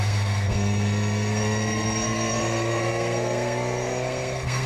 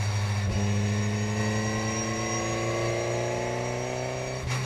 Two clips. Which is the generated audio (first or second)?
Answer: first